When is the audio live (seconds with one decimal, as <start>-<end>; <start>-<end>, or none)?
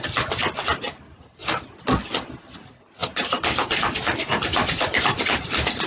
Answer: 0.0-2.0; 4.3-4.9